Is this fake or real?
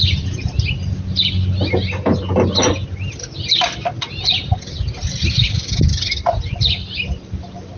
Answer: real